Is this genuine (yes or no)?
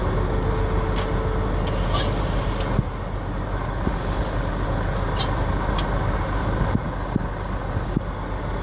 yes